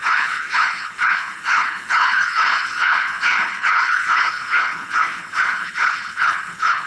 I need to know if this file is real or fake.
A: fake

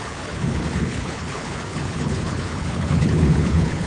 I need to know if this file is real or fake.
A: fake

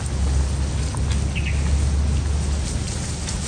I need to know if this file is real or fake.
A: real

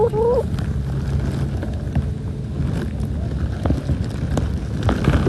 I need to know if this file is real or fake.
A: real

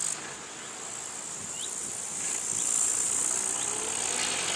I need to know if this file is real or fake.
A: real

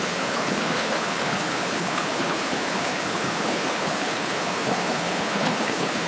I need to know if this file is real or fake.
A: fake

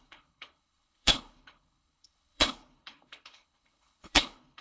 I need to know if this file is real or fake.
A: fake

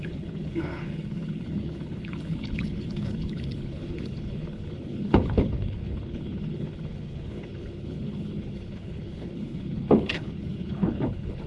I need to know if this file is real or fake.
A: fake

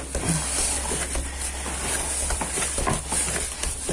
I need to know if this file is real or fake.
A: real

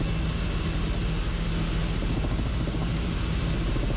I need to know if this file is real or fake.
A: real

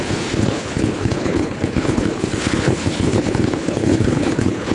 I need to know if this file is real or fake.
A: fake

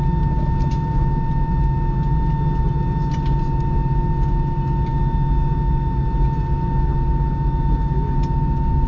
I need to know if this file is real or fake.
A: real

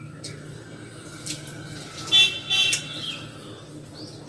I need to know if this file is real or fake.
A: real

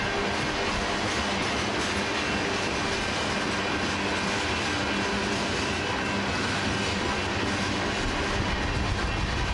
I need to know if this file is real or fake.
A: real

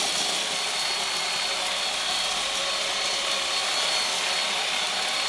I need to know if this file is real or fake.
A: real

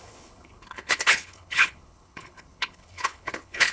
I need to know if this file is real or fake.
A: fake